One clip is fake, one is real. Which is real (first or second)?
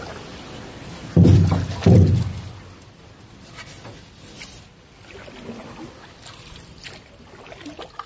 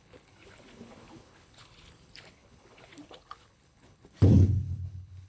first